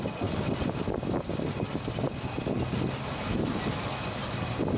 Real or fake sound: real